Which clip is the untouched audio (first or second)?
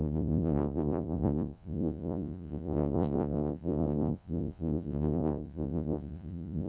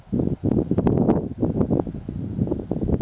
second